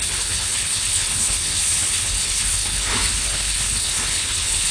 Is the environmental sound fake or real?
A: fake